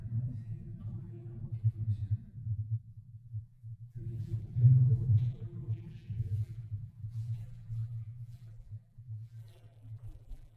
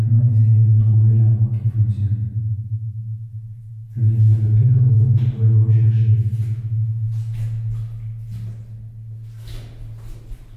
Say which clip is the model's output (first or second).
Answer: first